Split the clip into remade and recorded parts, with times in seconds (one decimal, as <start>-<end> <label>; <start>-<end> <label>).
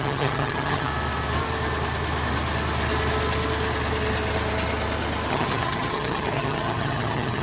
0.0-0.9 remade; 0.9-5.3 recorded; 5.3-7.4 remade